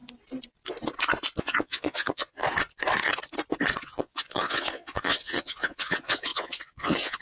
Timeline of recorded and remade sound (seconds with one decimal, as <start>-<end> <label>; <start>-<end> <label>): 0.0-1.4 recorded; 1.4-2.4 remade; 2.4-3.8 recorded; 3.8-7.2 remade